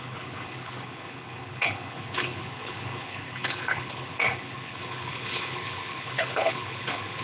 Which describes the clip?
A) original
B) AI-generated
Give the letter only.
B